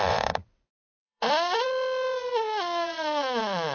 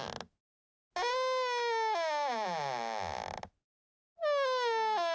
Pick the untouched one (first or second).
second